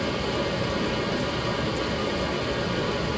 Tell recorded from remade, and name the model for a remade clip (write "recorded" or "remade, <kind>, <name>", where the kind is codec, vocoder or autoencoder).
recorded